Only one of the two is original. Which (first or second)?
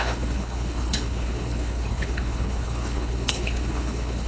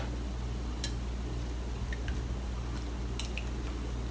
second